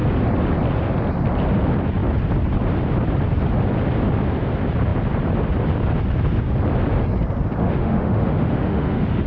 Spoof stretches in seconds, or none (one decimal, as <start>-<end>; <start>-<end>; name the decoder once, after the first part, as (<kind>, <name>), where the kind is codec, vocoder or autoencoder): 7.6-9.3 (autoencoder, DAC-VAE)